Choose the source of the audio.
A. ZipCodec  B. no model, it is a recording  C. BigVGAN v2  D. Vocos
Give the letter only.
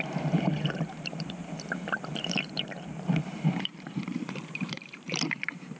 C